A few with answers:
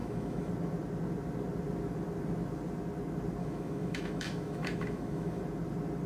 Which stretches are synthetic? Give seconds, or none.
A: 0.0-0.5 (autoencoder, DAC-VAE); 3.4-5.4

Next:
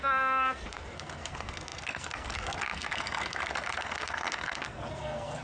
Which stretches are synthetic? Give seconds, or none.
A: 0.0-5.4 (codec, SNAC)

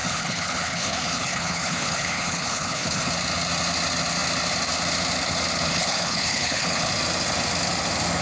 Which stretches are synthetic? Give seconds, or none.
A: 0.0-3.1 (codec, HILCodec); 5.7-6.9

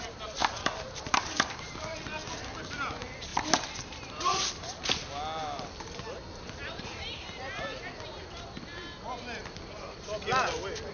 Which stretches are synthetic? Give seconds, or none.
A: 0.4-1.6 (vocoder, BigVGAN v2); 3.3-4.5; 6.6-7.8

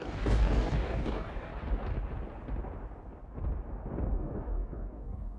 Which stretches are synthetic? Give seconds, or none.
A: 0.0-1.5 (codec, DAC); 4.1-5.4